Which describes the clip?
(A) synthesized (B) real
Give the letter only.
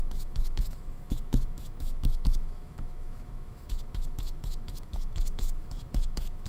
A